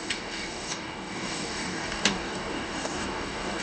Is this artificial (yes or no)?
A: yes